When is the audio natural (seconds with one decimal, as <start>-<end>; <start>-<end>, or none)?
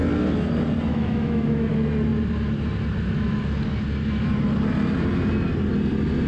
0.0-0.9; 1.7-6.3